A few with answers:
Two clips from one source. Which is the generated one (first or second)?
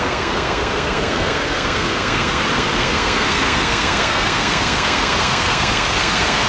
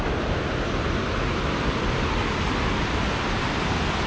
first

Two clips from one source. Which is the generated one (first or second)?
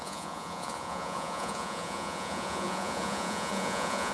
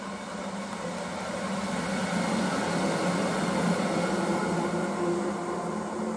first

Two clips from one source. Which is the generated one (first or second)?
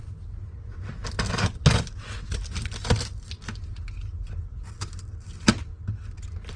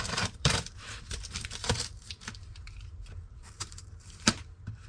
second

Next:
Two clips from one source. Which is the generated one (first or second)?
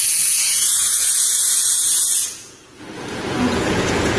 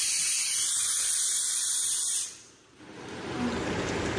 first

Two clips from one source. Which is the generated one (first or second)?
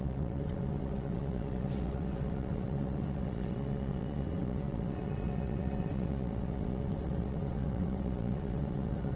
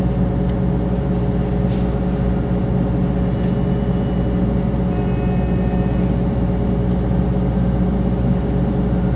first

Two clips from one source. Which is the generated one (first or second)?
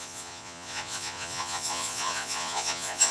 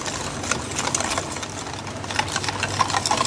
first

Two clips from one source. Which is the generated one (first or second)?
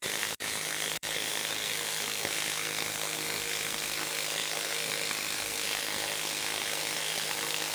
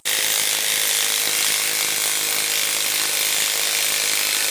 first